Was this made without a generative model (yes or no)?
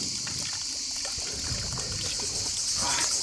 yes